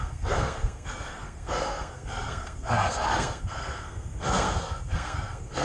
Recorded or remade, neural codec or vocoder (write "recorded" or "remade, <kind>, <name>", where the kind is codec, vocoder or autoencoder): remade, codec, SNAC